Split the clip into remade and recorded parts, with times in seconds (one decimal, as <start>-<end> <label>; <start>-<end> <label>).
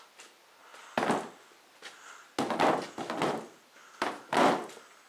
0.0-5.1 recorded